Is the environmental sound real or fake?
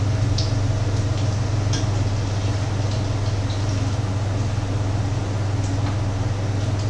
real